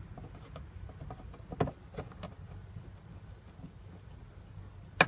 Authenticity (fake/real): real